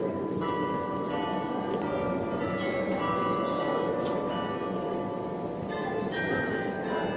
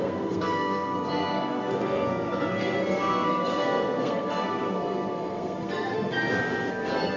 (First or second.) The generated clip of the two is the second